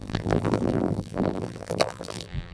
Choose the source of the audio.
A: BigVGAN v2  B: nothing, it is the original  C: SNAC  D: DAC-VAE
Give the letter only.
A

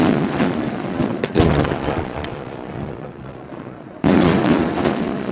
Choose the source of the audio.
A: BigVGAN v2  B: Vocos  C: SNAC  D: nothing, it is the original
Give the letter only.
B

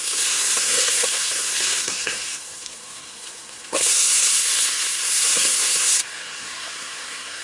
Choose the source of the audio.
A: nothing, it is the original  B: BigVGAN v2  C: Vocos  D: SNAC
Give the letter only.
D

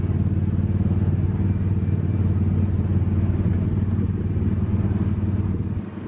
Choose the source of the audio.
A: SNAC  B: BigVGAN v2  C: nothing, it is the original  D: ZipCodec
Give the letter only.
C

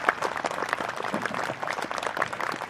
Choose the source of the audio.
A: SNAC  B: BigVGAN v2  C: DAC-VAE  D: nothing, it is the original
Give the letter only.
D